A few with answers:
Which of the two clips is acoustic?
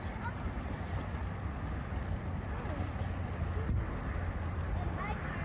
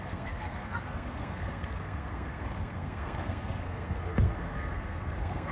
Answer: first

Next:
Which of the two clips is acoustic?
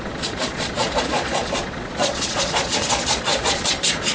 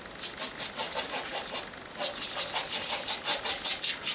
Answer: second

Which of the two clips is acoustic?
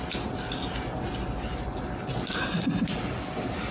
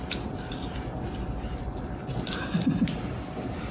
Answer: first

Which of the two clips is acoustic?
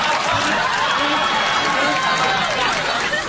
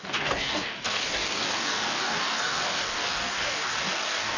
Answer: first